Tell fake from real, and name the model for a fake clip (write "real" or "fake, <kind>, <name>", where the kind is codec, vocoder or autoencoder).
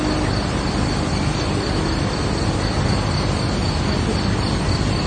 real